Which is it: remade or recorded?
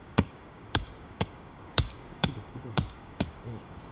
remade